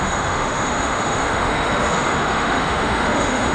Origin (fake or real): fake